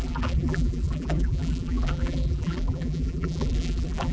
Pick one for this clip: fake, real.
fake